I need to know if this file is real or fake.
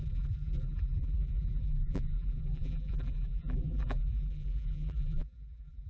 fake